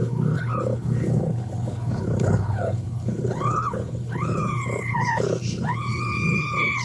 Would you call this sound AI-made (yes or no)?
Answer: yes